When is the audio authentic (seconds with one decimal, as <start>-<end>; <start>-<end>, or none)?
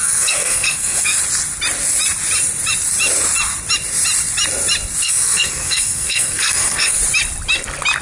1.2-5.0; 7.0-8.0